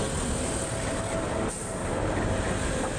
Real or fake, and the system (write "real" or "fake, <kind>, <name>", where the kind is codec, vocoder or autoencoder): real